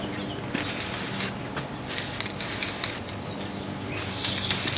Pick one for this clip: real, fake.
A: real